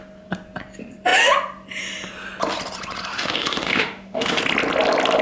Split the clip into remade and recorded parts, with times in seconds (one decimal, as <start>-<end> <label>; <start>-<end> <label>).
0.0-3.1 recorded; 3.1-4.4 remade; 4.4-5.2 recorded